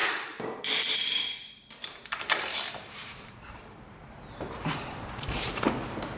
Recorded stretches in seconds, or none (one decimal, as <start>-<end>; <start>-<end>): 1.0-1.8; 5.5-6.2